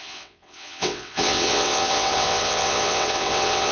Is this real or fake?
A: fake